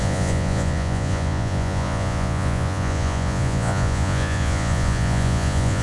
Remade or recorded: remade